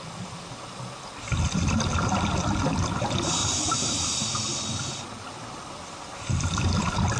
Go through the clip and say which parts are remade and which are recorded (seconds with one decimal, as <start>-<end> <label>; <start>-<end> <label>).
0.0-7.2 recorded